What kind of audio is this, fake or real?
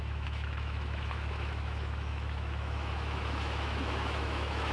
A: fake